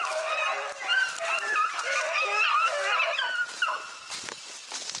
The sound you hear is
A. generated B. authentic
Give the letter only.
B